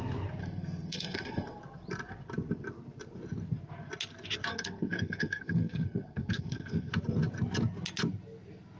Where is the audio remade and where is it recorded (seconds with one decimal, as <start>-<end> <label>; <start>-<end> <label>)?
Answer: 0.0-0.4 recorded; 0.4-1.6 remade; 1.6-4.5 recorded; 4.5-6.9 remade; 6.9-8.8 recorded